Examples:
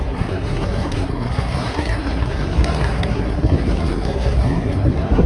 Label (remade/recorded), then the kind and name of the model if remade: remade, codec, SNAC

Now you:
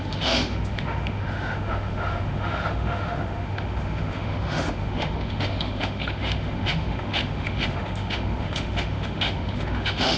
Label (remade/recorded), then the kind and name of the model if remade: remade, autoencoder, DAC-VAE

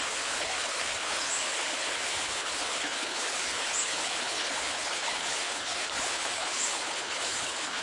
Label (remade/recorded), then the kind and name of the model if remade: remade, codec, HILCodec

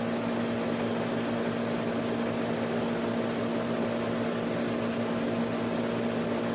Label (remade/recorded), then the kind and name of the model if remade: recorded